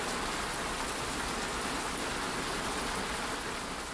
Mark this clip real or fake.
real